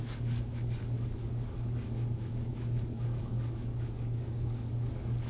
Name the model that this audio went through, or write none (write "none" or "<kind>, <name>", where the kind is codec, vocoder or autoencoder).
codec, DAC